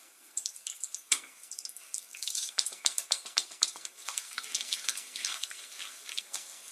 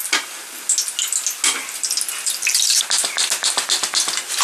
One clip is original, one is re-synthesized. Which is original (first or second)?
second